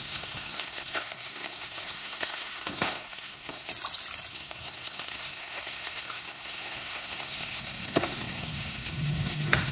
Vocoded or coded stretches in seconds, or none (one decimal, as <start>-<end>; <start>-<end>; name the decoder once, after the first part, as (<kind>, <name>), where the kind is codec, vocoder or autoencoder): 0.0-3.7 (codec, SNAC); 4.3-9.7